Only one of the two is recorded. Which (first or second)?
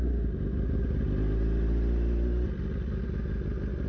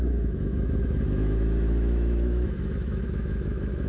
first